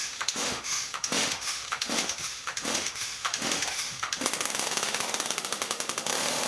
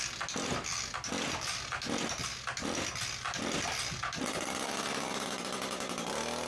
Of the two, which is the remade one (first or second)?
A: first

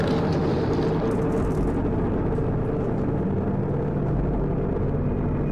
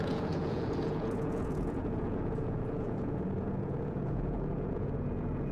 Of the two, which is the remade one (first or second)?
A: second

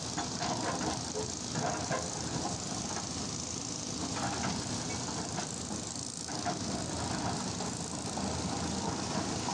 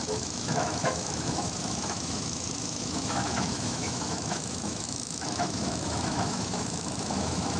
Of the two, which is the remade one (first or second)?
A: second